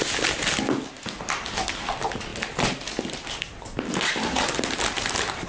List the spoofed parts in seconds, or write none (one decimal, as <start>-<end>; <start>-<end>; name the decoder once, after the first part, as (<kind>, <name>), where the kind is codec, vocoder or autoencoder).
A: none